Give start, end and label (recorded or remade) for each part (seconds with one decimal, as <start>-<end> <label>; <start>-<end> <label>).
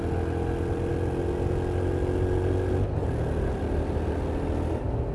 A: 0.0-5.1 recorded